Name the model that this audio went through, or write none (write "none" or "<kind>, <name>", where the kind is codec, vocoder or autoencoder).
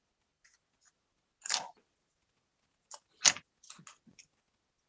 none